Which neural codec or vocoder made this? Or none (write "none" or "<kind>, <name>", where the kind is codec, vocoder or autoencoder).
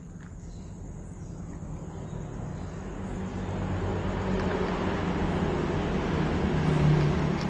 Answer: none